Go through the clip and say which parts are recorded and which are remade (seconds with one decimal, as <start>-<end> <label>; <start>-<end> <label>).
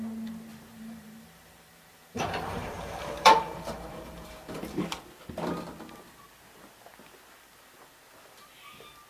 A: 0.0-0.5 recorded; 0.5-5.0 remade; 5.0-9.1 recorded